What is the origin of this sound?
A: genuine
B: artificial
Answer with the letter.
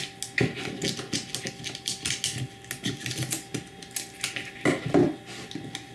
A